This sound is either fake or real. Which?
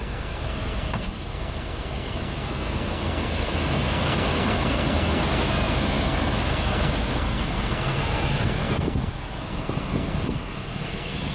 fake